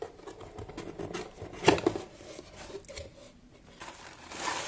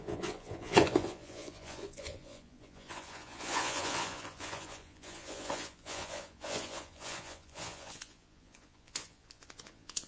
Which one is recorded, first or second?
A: first